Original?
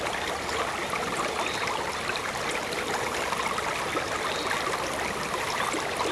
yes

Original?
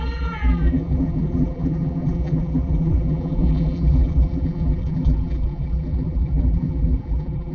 no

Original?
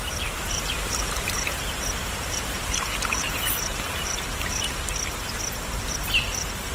no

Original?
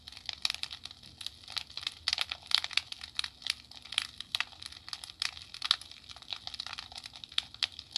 yes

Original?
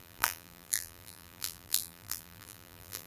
no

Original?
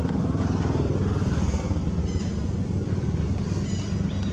yes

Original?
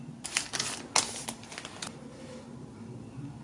yes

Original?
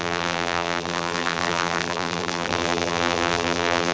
no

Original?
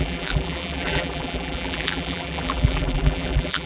no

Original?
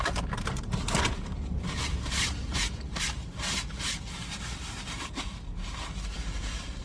no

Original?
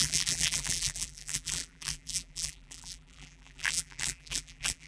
no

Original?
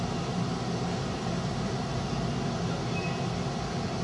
yes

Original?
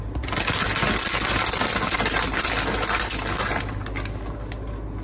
yes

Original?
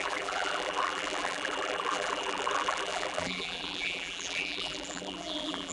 no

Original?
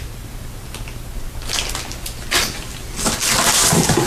yes